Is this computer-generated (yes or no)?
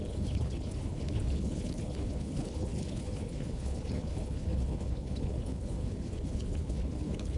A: yes